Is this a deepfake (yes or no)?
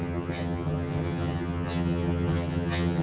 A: yes